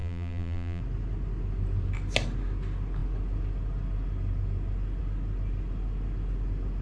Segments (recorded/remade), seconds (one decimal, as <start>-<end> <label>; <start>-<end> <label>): 0.0-0.8 remade; 0.8-6.8 recorded